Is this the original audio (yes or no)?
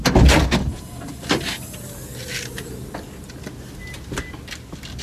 yes